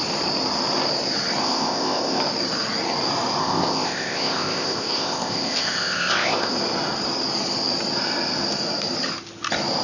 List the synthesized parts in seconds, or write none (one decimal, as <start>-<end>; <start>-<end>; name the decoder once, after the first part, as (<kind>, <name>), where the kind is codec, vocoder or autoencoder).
1.4-2.2 (codec, ZipCodec); 3.4-6.5